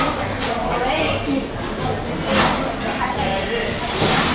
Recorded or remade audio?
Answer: recorded